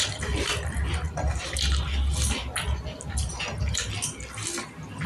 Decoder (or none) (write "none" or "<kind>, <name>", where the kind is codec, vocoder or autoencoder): none